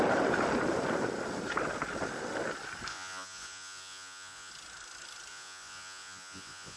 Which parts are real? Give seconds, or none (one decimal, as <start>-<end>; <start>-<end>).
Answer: 0.0-2.9; 4.5-5.3